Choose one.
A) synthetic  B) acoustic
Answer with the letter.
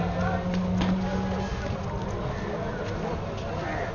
B